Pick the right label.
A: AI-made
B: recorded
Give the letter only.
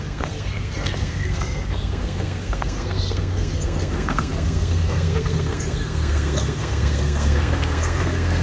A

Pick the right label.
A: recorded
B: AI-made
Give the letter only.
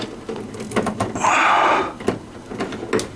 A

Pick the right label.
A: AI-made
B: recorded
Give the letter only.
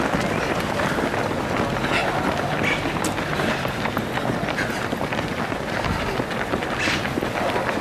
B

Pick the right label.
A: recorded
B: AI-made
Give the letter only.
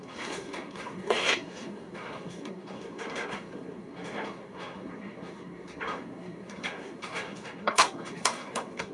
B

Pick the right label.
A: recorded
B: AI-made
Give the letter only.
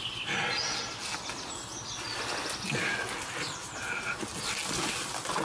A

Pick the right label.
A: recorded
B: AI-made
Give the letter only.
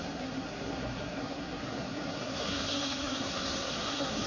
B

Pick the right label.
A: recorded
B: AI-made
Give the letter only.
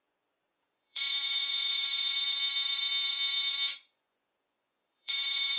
B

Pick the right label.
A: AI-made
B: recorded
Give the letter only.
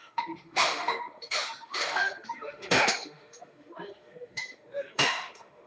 A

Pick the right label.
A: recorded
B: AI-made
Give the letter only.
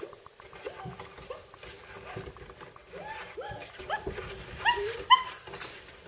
A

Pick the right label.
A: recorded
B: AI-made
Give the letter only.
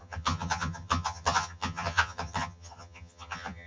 B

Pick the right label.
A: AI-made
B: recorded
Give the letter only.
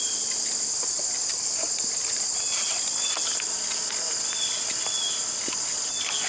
B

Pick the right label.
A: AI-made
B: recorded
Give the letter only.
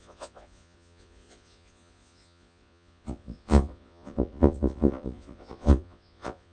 A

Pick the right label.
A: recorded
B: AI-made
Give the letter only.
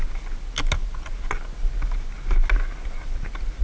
A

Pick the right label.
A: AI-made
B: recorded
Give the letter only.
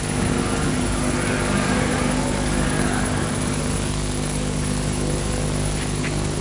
A